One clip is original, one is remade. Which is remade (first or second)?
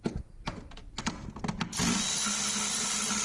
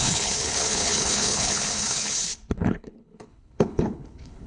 second